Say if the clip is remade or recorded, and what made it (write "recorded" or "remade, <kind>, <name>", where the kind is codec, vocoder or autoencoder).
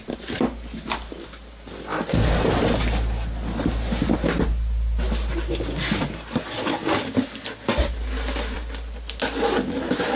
recorded